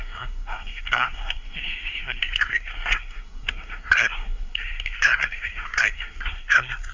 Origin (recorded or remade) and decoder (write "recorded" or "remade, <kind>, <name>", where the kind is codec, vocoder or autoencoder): remade, codec, SNAC